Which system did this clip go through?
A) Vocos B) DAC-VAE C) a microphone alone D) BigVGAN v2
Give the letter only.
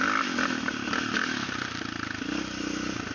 C